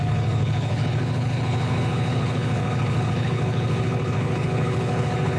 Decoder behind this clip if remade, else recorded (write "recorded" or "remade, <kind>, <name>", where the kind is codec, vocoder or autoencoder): remade, codec, HILCodec